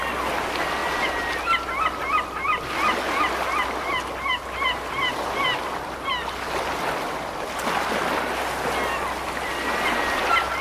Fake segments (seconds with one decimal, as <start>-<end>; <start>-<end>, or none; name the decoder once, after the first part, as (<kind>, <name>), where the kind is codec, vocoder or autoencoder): none

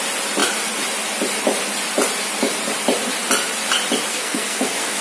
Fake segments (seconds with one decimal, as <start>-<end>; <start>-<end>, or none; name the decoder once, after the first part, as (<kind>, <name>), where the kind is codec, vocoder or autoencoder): 4.1-5.0 (codec, SNAC)

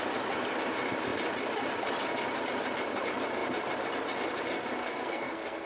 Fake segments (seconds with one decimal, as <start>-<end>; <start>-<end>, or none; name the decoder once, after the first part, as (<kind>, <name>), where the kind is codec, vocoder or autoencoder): 4.8-5.7 (codec, SNAC)

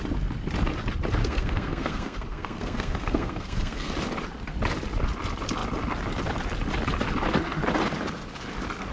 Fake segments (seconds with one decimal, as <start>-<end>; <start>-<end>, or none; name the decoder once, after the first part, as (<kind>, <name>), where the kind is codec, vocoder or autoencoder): 1.2-3.9 (codec, SNAC)

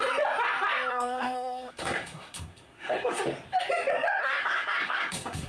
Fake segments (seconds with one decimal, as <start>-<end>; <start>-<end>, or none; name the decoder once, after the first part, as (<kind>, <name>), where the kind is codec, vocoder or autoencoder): 0.9-3.2 (codec, SNAC); 4.2-5.5

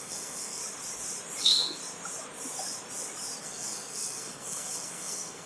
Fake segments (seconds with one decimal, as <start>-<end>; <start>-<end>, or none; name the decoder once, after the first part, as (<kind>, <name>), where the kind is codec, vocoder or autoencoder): 0.0-0.6 (codec, SNAC); 1.4-1.8; 3.4-5.5

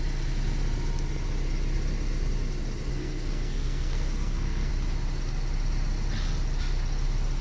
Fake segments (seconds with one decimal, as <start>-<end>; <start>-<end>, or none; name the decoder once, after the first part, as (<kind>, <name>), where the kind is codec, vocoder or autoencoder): 2.9-4.7 (codec, SNAC)

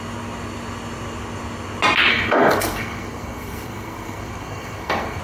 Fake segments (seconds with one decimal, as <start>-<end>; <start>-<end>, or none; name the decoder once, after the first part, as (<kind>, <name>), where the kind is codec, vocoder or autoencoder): 2.1-5.2 (codec, SNAC)